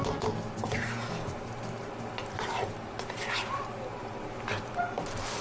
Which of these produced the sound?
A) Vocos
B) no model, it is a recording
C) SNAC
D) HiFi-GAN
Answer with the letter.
B